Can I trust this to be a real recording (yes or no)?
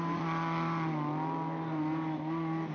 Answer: yes